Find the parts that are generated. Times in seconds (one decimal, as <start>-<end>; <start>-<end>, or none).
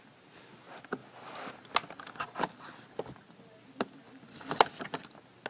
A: none